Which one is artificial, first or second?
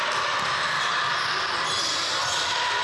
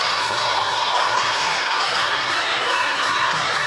second